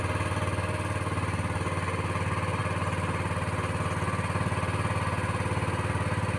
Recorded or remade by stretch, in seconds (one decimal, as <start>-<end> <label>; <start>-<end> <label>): 0.0-6.4 recorded